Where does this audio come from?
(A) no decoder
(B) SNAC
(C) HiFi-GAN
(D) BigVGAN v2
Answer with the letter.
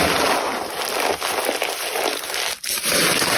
A